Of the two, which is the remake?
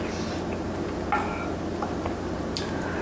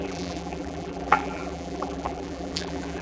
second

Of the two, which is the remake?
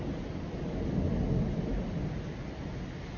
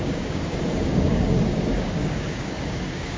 second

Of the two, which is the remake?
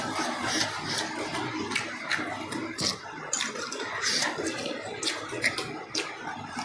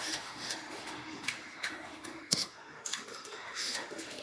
second